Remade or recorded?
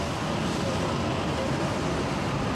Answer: recorded